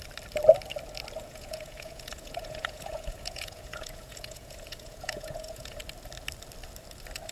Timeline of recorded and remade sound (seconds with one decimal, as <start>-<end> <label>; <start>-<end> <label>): 0.0-1.2 recorded; 1.2-5.8 remade; 5.8-7.3 recorded